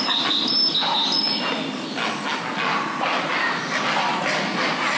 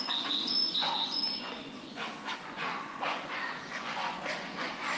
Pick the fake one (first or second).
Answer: second